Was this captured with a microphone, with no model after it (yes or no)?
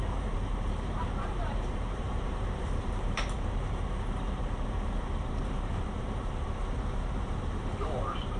no